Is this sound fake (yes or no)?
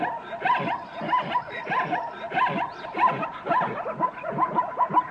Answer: no